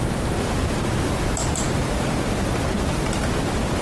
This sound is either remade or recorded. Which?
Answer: recorded